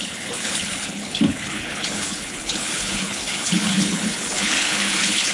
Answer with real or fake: fake